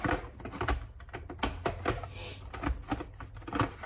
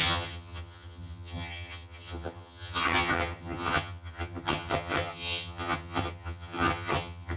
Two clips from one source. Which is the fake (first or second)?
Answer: second